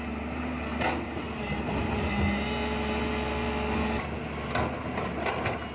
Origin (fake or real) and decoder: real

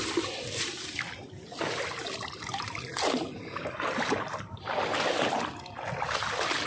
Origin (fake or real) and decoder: real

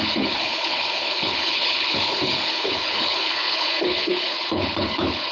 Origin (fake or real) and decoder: fake, codec, HILCodec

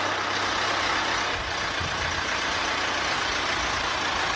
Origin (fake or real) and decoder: real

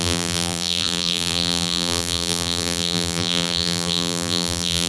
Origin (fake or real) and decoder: fake, vocoder, BigVGAN v2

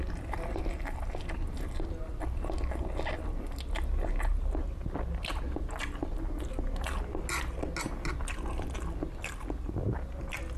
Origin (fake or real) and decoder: real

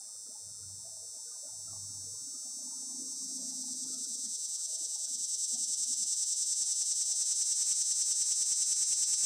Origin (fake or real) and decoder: real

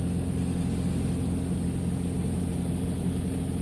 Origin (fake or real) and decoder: real